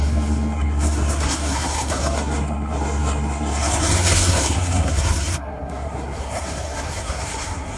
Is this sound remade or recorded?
remade